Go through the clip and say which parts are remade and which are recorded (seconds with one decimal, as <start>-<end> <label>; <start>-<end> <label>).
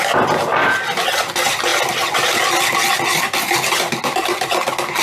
0.0-5.0 recorded